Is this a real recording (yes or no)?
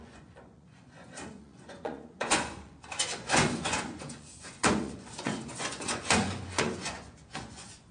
no